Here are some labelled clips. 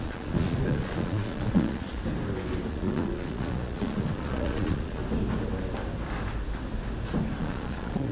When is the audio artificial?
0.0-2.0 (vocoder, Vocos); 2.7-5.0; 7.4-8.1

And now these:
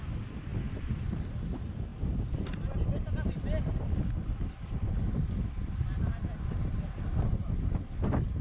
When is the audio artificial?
none

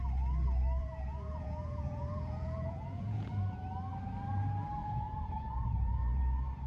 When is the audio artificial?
0.8-3.4 (vocoder, Vocos); 4.8-6.2

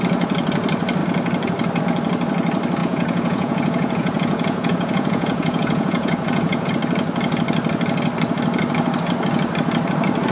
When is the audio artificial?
2.8-6.7 (vocoder, Vocos)

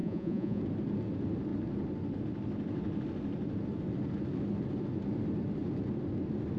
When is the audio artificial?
0.0-0.6 (vocoder, Vocos)

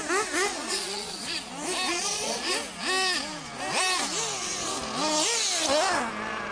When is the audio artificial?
0.5-1.5 (vocoder, Vocos); 1.9-2.5

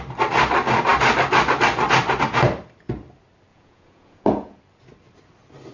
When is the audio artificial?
3.5-4.6 (vocoder, Vocos)